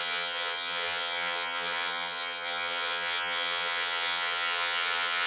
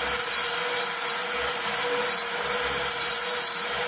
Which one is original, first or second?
second